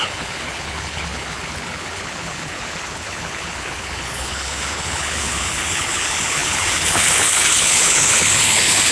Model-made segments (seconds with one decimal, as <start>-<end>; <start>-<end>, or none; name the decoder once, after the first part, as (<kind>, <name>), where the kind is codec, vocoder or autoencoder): 0.0-8.9 (codec, HILCodec)